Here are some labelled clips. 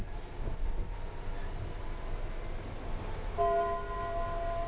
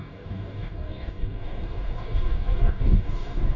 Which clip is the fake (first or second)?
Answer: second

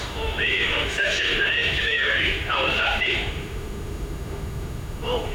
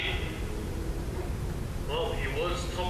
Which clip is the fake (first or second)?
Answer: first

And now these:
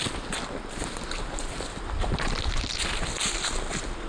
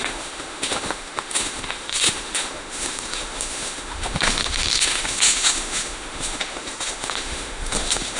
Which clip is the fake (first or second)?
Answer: second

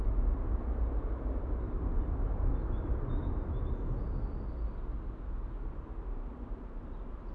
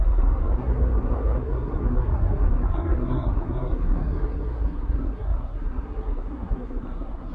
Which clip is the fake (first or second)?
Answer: second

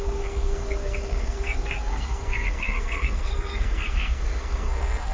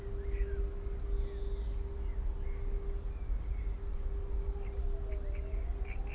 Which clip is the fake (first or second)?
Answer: first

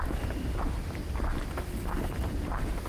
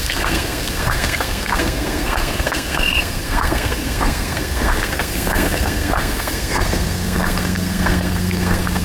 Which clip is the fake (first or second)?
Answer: second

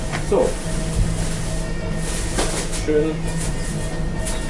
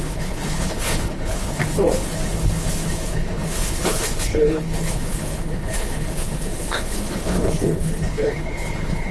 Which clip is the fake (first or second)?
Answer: second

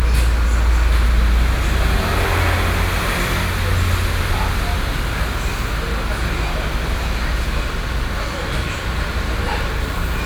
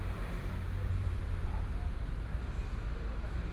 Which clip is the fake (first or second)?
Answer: second